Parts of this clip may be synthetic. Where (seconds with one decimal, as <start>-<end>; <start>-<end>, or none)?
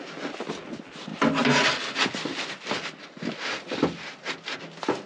none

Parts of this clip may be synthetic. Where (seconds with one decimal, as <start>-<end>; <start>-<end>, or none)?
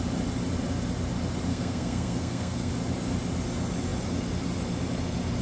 1.5-2.7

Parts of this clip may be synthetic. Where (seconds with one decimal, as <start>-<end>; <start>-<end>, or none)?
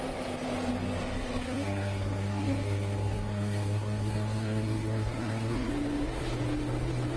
1.4-5.7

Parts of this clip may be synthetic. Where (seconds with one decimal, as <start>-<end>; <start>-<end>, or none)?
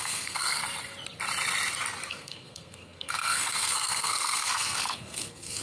0.0-0.6; 2.1-5.6